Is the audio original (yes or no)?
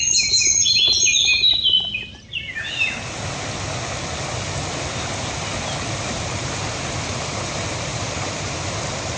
yes